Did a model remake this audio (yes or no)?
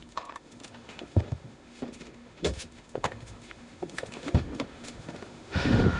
yes